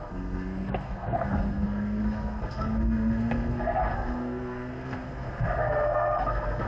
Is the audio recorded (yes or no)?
no